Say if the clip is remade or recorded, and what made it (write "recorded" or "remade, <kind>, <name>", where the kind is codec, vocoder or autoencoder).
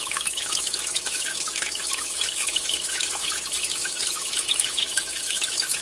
remade, autoencoder, DAC-VAE